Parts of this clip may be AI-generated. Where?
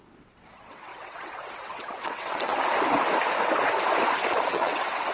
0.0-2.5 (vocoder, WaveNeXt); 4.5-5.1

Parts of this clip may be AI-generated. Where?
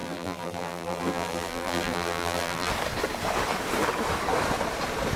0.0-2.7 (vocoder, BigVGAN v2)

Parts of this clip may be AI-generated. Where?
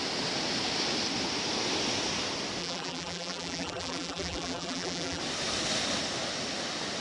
2.6-5.2 (vocoder, BigVGAN v2)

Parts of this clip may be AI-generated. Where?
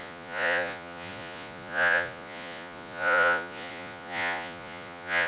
0.0-5.3 (vocoder, Vocos)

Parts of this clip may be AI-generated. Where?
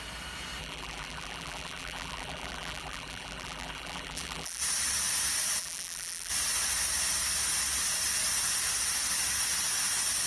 0.6-4.6 (vocoder, BigVGAN v2); 5.6-6.3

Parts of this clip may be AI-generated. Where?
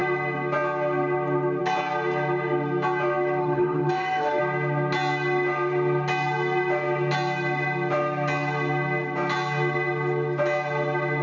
3.4-4.4 (autoencoder, DAC-VAE)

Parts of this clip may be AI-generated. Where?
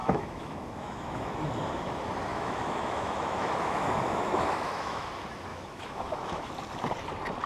0.0-1.5 (autoencoder, DAC-VAE); 2.3-5.1; 5.5-6.5